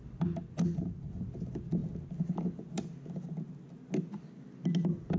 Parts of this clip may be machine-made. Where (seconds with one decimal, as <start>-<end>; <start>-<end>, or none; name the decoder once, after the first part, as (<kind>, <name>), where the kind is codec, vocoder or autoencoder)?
none